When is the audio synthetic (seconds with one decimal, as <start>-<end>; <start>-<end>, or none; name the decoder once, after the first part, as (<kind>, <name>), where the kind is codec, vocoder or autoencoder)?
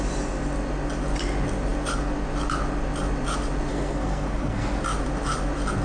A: 3.7-4.8 (codec, SNAC)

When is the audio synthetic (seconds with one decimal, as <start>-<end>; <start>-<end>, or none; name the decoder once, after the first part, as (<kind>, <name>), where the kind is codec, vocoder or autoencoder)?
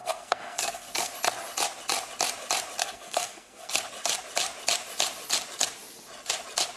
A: 0.0-1.1 (codec, SNAC); 2.8-3.7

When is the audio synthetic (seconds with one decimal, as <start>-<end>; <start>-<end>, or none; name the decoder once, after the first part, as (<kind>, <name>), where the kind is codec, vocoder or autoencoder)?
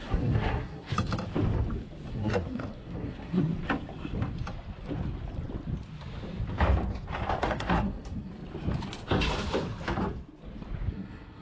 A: 0.0-0.9 (codec, SNAC); 2.1-3.5; 7.4-8.3; 10.9-11.4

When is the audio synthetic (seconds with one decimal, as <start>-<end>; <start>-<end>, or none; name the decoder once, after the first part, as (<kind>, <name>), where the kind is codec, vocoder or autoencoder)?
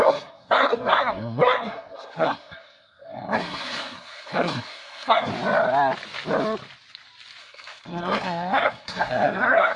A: 0.0-5.3 (codec, SNAC); 7.4-9.8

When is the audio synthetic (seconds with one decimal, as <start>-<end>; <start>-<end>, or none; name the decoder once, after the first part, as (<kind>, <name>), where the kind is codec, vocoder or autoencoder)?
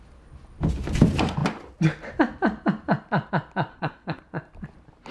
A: 3.7-4.2 (codec, SNAC)